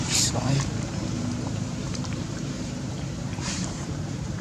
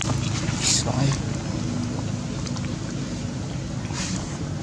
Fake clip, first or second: first